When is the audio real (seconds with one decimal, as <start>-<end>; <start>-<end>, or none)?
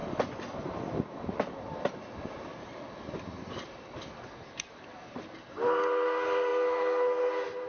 0.0-7.7